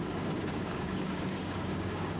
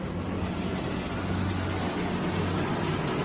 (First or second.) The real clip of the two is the second